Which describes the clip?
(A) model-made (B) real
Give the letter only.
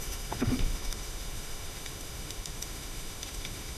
A